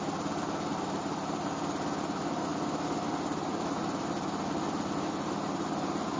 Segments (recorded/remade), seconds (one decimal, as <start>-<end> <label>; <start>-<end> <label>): 0.0-6.2 recorded